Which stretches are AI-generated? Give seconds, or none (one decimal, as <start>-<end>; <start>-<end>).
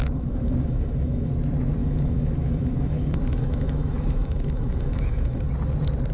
0.0-1.3; 1.8-5.5